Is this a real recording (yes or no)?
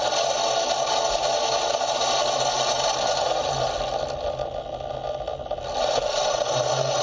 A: yes